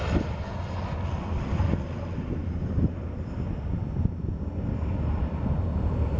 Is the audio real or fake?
real